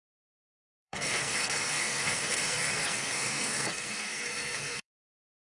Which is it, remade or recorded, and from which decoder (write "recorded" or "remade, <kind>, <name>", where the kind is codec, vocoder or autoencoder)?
remade, codec, SNAC